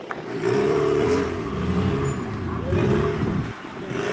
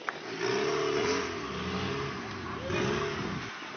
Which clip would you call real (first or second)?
second